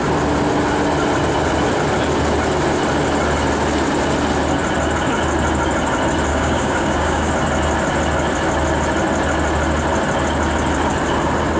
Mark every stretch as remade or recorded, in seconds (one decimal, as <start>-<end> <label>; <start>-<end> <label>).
0.0-6.3 recorded; 6.3-7.3 remade; 7.3-11.6 recorded